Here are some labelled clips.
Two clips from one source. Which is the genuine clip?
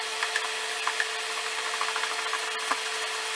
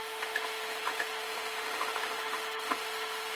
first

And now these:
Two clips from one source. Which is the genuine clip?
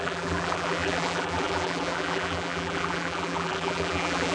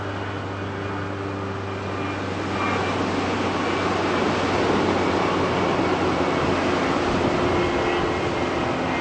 second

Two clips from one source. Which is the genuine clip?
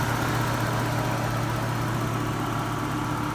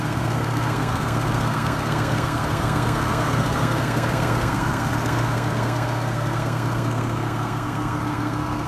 first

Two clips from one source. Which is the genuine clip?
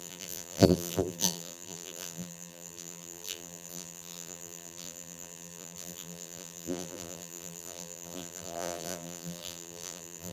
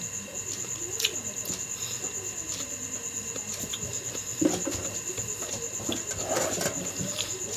second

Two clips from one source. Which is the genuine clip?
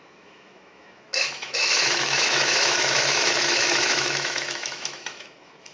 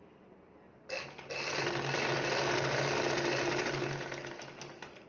second